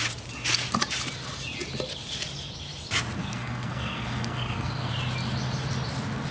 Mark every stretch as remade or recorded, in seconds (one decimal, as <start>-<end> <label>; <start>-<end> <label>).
0.0-3.2 recorded; 3.2-4.9 remade; 4.9-6.3 recorded